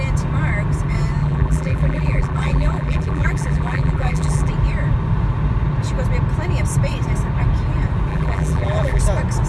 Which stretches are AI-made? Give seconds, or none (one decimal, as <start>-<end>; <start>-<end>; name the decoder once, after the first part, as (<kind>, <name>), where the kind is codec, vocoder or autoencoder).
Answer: 1.2-4.5 (vocoder, BigVGAN v2); 8.1-9.0